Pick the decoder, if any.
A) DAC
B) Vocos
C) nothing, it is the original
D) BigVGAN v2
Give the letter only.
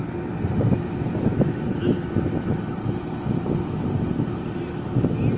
C